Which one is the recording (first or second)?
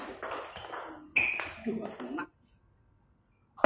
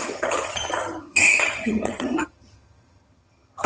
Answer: first